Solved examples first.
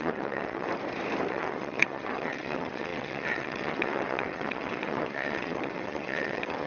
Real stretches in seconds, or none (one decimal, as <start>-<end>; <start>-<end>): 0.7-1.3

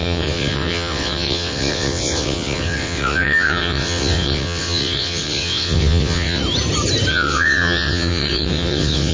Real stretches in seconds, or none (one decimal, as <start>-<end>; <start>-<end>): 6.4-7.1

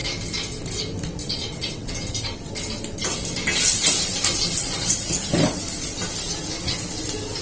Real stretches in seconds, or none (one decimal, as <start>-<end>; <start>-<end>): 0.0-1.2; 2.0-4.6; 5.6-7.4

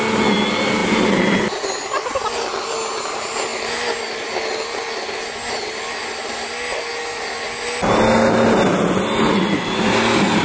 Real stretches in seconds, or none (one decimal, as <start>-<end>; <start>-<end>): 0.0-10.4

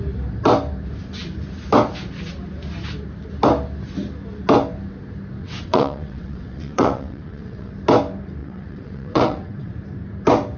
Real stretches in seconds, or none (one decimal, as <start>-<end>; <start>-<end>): 0.0-5.4; 7.7-8.4; 9.7-10.6

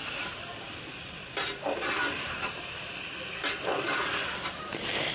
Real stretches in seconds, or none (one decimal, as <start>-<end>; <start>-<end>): 0.0-5.1

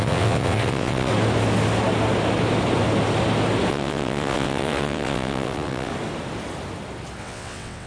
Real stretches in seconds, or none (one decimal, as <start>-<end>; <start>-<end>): 1.1-3.7; 5.9-7.2

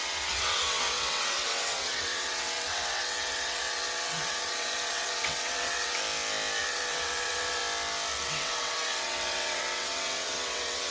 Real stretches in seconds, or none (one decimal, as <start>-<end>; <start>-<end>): 6.0-6.6; 7.6-8.2